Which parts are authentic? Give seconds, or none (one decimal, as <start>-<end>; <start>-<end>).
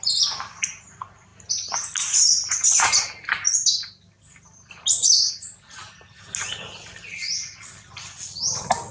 0.0-8.9